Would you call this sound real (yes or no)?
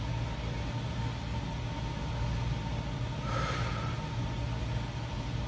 yes